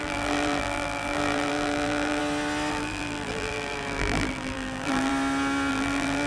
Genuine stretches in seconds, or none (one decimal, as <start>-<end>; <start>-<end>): 2.2-2.7; 5.1-5.7